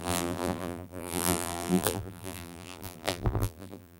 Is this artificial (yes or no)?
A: yes